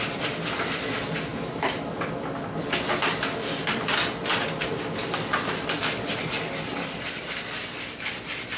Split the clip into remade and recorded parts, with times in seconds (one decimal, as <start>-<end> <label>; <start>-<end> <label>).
0.0-8.6 recorded